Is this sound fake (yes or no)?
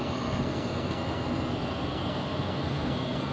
yes